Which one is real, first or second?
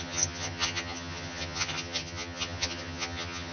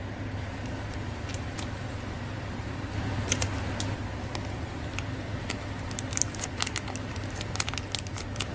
second